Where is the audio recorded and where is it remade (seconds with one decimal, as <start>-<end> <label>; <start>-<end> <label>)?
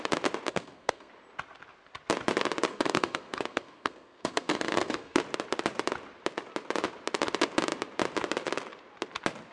0.0-0.5 recorded; 0.5-1.1 remade; 1.1-2.7 recorded; 2.7-5.2 remade; 5.2-9.5 recorded